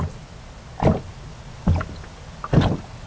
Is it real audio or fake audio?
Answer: real